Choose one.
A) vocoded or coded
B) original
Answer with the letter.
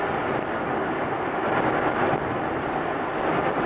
B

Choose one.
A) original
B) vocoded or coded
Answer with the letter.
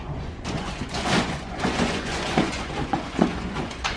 B